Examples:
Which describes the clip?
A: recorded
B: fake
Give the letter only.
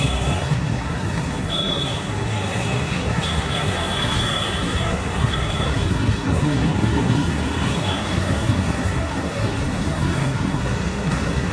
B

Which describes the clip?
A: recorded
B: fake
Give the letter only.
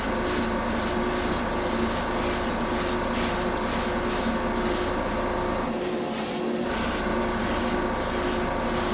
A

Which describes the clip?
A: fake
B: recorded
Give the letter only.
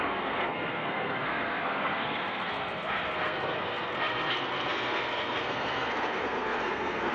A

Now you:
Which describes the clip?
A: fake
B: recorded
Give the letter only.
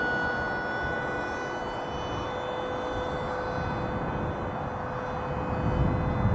B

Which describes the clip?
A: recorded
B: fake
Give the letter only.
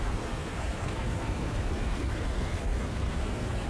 B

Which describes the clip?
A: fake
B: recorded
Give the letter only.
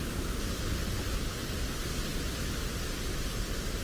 B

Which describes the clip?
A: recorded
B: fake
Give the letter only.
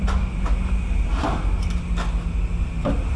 A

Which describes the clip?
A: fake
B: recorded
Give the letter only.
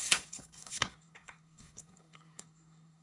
A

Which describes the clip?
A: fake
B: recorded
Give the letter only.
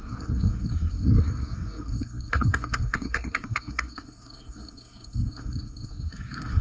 A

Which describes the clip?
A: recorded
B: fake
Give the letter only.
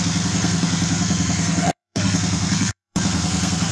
B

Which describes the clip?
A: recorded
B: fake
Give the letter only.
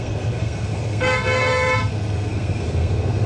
B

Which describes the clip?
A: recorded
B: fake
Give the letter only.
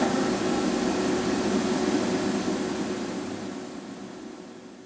A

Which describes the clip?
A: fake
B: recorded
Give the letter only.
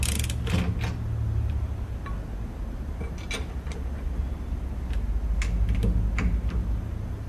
B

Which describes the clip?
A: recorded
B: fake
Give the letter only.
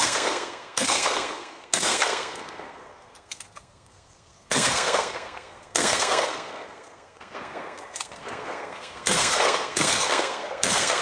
B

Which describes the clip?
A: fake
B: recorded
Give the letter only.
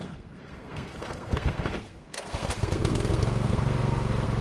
A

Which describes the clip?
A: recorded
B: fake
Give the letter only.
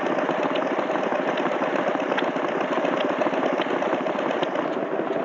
A